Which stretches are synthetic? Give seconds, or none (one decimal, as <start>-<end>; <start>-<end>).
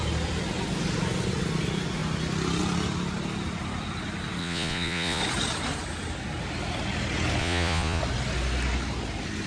4.4-5.2; 7.4-8.0